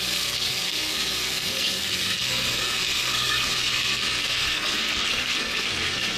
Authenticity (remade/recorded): remade